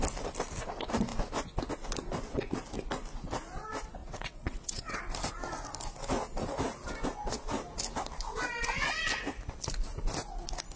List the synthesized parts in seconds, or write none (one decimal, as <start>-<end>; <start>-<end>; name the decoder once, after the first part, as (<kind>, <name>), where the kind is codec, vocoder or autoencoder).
4.0-5.0 (vocoder, WaveNeXt)